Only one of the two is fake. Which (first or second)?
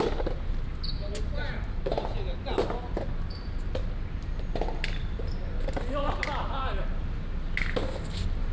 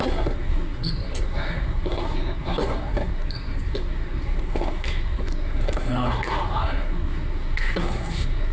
second